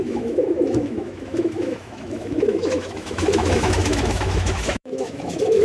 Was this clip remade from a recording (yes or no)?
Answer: yes